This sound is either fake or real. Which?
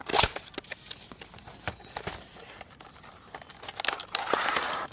real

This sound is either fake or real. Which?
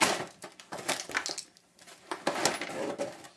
real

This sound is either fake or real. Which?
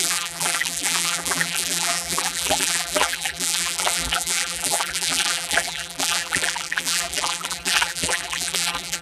fake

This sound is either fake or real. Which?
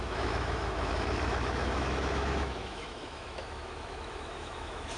fake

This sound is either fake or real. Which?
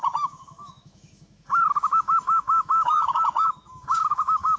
fake